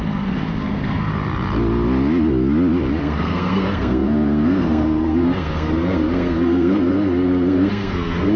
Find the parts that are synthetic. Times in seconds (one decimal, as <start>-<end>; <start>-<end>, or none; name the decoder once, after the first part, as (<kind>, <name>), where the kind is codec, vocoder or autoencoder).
0.0-1.1 (codec, SNAC); 3.0-8.4